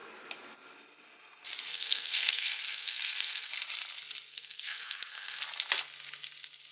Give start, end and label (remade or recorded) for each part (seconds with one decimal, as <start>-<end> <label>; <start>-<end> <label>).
0.0-1.7 recorded; 1.7-3.5 remade; 3.5-4.3 recorded; 4.3-5.4 remade; 5.4-6.7 recorded